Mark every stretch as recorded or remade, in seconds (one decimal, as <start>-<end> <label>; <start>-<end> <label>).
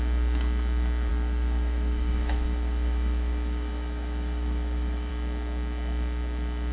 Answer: 0.0-1.1 recorded; 1.1-5.1 remade; 5.1-6.7 recorded